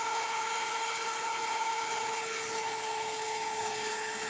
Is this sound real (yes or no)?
no